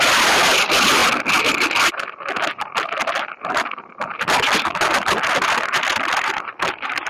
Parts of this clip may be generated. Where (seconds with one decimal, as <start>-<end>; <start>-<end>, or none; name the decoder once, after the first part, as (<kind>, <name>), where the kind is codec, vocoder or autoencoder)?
5.9-7.1 (vocoder, BigVGAN v2)